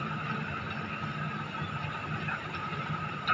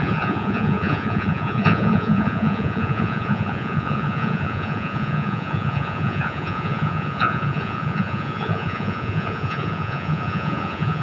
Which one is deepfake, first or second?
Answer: second